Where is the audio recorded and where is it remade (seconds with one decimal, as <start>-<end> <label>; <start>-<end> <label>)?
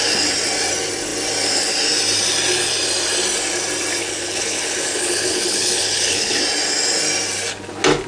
0.0-4.0 recorded; 4.0-6.4 remade; 6.4-8.1 recorded